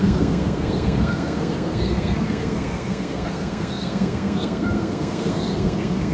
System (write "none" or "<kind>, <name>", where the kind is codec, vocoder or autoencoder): codec, SNAC